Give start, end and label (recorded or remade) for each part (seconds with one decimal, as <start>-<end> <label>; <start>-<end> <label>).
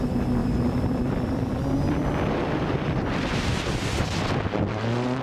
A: 0.0-0.4 recorded; 0.4-3.5 remade; 3.5-5.2 recorded